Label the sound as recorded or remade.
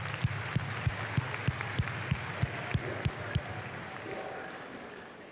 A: recorded